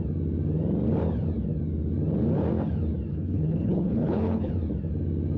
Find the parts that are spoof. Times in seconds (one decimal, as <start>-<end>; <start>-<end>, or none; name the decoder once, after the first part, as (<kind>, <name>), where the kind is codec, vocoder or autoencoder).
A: 3.1-4.5 (codec, HILCodec)